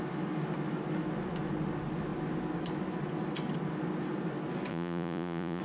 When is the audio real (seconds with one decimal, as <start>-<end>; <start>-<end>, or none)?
0.0-4.7

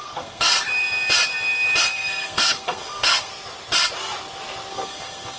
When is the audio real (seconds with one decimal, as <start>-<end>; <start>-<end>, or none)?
0.5-1.8; 3.3-4.7

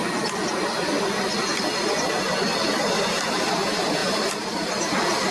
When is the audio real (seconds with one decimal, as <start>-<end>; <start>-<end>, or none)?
0.0-4.0

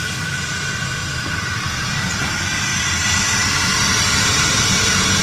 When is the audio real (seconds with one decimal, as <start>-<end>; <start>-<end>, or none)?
0.0-1.0; 2.2-2.7; 3.7-5.2

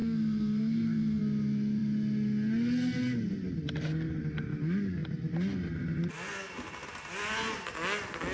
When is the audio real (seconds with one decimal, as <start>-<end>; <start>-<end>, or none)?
1.2-8.3

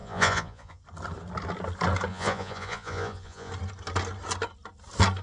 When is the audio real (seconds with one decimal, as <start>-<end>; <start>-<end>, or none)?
0.8-2.1; 3.5-5.2

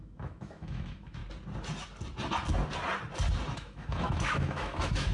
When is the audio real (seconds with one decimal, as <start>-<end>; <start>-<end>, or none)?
1.2-3.5

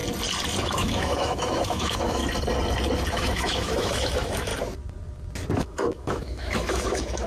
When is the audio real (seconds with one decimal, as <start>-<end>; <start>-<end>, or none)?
0.0-0.6; 2.2-3.1; 4.5-5.6